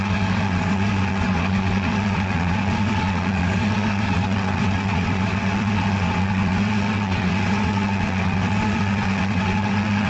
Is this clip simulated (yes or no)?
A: yes